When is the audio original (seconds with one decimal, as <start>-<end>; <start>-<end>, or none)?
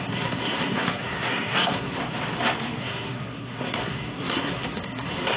2.0-2.8